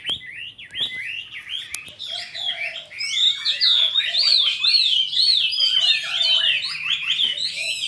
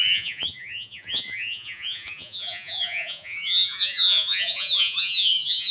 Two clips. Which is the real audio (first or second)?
first